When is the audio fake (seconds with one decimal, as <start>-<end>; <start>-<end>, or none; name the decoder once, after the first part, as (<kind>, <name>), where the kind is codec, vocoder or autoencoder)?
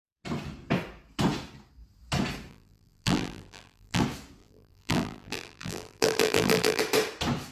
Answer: 2.5-4.0 (vocoder, BigVGAN v2); 4.4-6.8